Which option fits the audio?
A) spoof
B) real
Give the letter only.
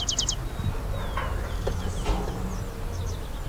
B